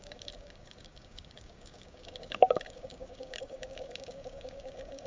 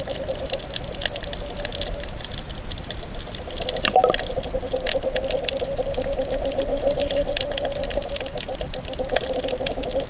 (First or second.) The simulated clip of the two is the first